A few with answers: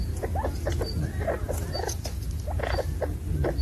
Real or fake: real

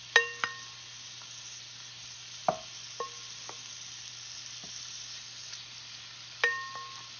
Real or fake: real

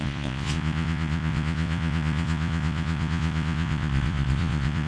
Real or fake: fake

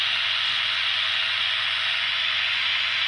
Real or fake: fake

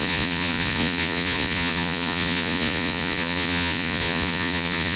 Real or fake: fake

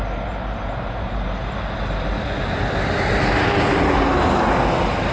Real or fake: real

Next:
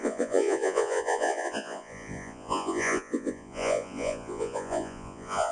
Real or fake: fake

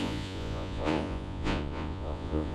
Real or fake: fake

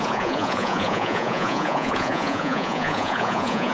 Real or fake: fake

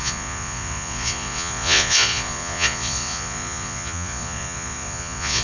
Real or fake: fake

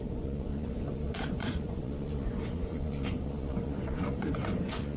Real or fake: fake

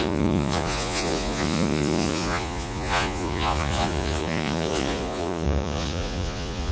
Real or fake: fake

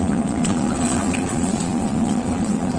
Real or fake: fake